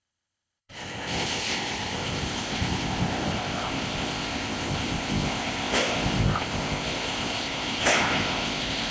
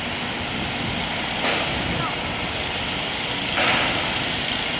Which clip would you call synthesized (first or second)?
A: first